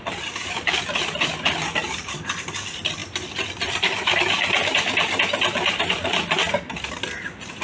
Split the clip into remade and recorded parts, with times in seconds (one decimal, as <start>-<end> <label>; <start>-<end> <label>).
0.0-7.6 remade